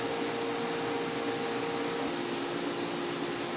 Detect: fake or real real